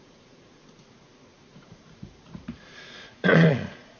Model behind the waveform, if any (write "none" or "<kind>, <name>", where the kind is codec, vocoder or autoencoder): vocoder, Vocos